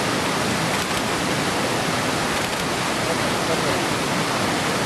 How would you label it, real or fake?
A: real